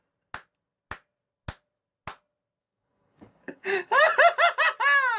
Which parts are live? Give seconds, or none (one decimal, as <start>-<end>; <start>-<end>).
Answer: 0.0-2.6; 4.0-5.2

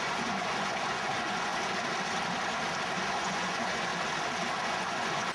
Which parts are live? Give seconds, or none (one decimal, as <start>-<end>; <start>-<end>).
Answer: 1.5-3.1; 3.9-4.5

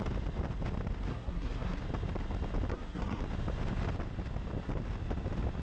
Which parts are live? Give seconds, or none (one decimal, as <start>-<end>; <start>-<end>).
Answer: 0.0-1.1; 1.8-2.7; 3.2-5.6

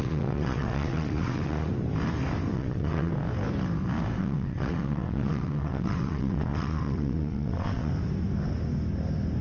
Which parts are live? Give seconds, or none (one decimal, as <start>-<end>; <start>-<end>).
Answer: 1.7-2.5; 3.1-4.2; 7.9-9.4